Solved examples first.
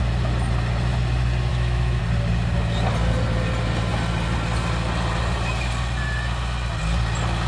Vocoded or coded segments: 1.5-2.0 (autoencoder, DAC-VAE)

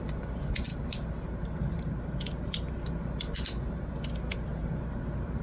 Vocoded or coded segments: 0.7-2.9 (vocoder, BigVGAN v2); 4.6-5.4

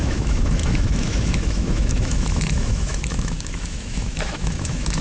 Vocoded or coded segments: 0.0-5.0 (autoencoder, DAC-VAE)

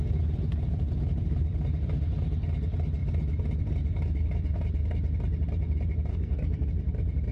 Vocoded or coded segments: 6.1-6.7 (codec, SNAC)

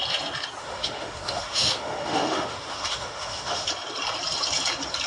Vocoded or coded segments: 0.6-3.7 (autoencoder, DAC-VAE)

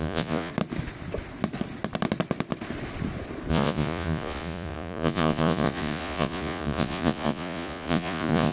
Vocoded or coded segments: 0.0-0.5 (vocoder, Vocos); 3.5-8.5